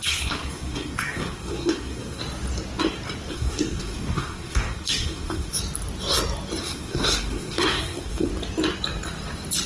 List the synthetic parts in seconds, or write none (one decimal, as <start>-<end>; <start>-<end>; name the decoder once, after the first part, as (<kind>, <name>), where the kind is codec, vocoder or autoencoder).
0.0-2.2 (codec, SNAC); 3.3-5.6; 6.6-8.3